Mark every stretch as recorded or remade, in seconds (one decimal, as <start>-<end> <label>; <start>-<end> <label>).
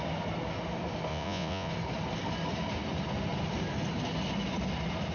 0.0-1.1 recorded; 1.1-1.7 remade; 1.7-5.1 recorded